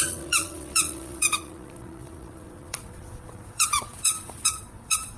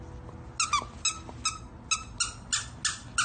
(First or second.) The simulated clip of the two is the first